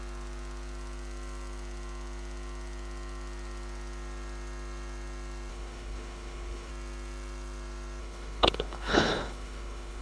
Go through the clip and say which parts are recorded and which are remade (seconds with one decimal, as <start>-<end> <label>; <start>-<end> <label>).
0.0-5.5 recorded; 5.5-6.7 remade; 6.7-8.0 recorded; 8.0-10.0 remade